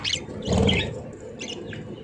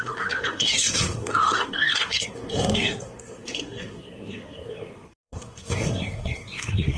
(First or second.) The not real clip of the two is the second